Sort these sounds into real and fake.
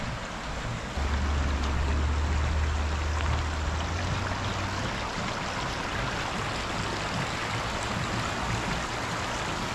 real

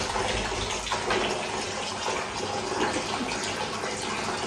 real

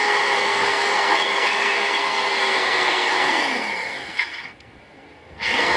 fake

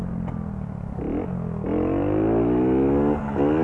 real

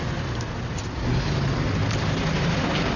real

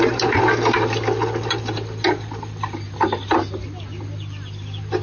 real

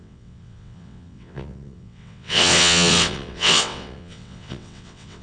fake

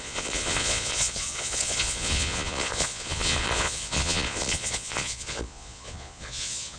fake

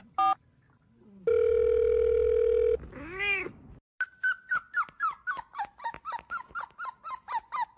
real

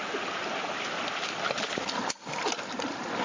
real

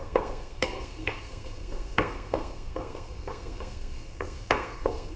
fake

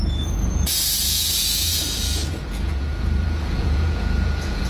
fake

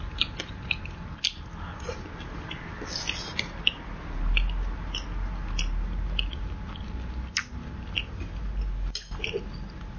real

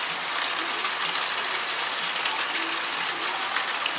real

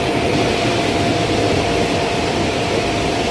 real